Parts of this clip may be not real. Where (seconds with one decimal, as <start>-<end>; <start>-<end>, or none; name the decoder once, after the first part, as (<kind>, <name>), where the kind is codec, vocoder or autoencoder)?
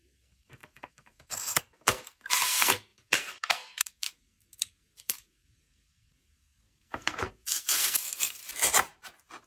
0.0-8.4 (codec, SNAC)